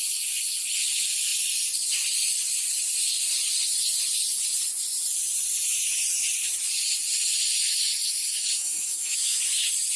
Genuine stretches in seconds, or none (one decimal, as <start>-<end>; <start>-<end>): 0.0-8.6; 9.4-10.0